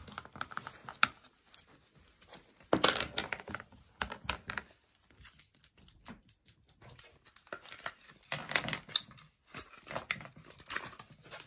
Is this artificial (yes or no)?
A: no